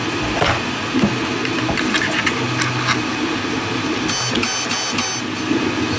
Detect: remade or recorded recorded